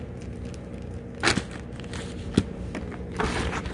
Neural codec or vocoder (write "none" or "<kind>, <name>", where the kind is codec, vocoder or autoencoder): none